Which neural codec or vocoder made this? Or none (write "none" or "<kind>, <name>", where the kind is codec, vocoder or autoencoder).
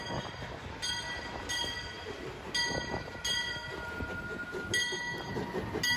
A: none